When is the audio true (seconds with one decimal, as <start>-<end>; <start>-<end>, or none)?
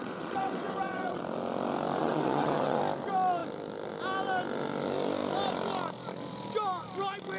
1.2-2.0; 2.8-7.4